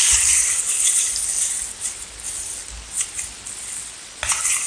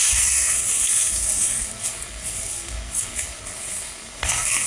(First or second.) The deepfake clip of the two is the second